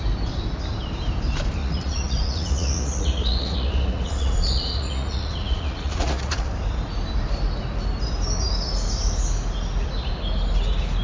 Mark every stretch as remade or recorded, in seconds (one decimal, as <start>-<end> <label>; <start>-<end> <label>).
0.0-1.6 recorded; 1.6-6.5 remade; 6.5-11.0 recorded